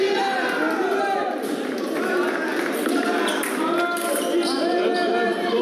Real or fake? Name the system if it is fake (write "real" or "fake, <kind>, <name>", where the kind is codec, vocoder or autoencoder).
real